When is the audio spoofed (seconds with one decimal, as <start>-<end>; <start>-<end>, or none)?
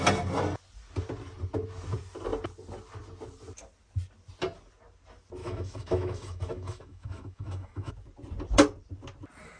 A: 5.4-7.9